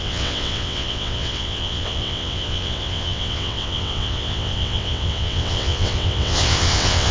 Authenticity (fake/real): fake